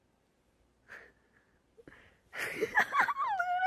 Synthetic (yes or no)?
no